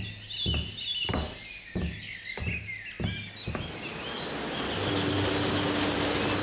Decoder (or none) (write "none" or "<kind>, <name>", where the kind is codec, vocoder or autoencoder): none